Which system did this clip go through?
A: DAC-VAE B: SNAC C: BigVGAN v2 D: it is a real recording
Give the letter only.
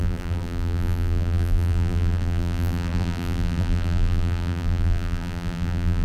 C